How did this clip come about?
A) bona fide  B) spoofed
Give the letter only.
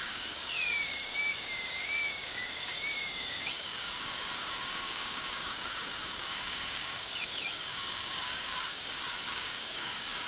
B